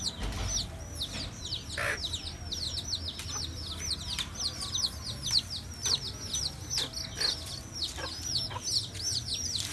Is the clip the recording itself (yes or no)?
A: yes